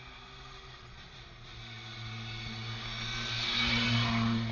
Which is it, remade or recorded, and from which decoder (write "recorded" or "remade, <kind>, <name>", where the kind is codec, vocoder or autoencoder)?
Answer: recorded